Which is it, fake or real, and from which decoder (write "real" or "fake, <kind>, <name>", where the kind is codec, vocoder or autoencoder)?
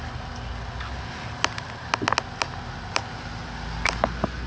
real